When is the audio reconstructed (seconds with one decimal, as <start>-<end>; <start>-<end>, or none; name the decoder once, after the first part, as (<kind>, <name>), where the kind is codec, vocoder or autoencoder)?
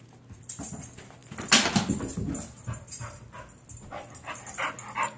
none